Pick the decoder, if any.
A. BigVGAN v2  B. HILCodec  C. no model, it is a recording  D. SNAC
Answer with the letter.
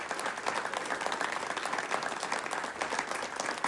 C